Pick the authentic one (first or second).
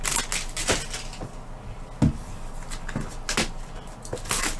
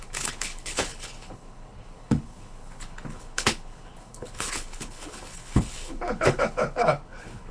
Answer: first